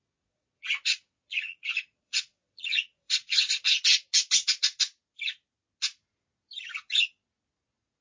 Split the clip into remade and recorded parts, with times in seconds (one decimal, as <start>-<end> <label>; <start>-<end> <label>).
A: 0.0-3.5 remade; 3.5-8.0 recorded